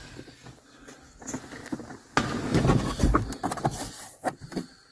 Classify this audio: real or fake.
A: real